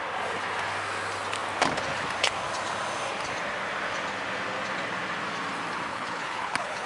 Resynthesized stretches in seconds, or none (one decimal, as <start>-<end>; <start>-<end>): 5.9-6.9